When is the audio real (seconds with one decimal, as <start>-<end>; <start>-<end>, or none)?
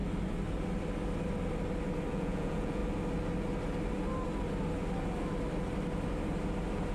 0.0-2.1; 2.8-6.9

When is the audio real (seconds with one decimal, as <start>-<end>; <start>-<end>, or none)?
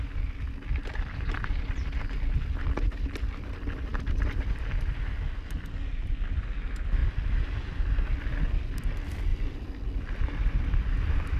0.0-9.3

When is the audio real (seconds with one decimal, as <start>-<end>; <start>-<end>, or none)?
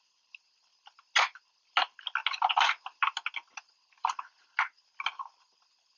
0.0-6.0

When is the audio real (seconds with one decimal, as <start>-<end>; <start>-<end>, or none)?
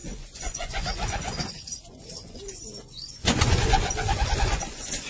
none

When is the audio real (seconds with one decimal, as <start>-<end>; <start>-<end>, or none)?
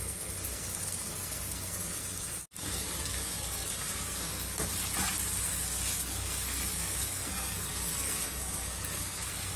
4.7-5.4